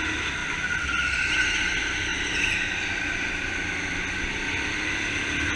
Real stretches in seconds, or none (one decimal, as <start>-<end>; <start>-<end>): 0.0-2.1; 3.3-5.6